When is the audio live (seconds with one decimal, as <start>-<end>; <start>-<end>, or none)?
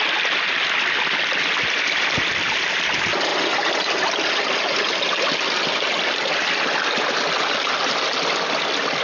0.0-9.0